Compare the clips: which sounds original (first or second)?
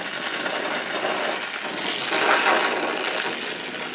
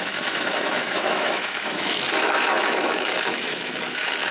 first